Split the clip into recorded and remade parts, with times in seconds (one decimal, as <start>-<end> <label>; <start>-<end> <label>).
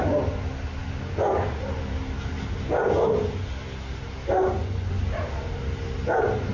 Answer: 0.0-4.4 recorded; 4.4-4.9 remade; 4.9-6.5 recorded